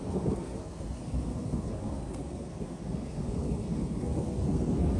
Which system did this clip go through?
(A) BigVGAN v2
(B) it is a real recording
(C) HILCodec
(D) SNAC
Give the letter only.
D